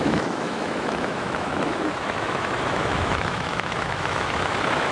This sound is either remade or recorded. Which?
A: remade